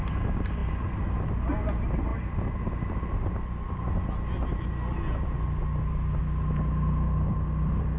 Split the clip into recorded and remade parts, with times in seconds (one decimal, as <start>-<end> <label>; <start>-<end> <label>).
0.0-8.0 recorded

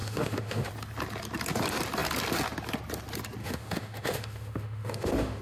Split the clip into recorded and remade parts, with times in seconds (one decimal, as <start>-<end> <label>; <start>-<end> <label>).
0.0-0.7 remade; 0.7-3.4 recorded; 3.4-5.4 remade